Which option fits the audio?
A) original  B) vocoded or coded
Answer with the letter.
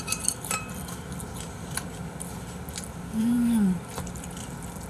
B